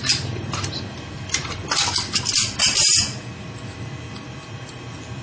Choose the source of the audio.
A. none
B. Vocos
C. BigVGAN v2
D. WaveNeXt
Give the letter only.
C